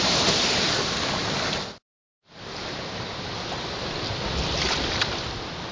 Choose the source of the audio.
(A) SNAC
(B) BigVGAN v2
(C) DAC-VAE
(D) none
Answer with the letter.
D